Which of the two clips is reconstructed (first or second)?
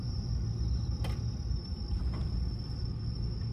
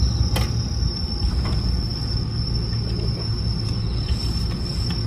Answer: first